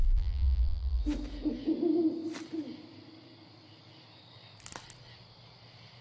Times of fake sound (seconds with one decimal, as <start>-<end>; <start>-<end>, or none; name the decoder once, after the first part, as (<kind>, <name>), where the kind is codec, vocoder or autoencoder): 0.0-1.0 (vocoder, BigVGAN v2)